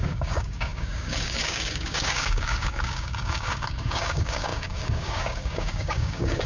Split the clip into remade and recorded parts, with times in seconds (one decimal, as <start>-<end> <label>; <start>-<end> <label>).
0.0-6.5 remade